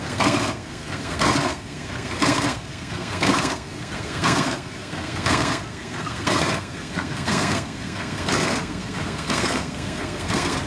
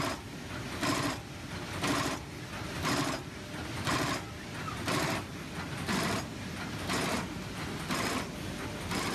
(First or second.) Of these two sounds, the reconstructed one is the first